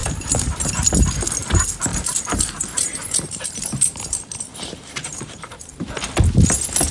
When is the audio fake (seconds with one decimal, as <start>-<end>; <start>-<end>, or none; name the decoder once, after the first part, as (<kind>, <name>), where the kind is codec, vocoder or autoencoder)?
0.0-0.7 (vocoder, BigVGAN v2); 1.9-5.9